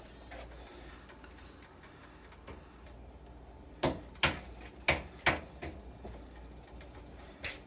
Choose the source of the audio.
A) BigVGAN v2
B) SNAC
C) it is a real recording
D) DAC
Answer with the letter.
C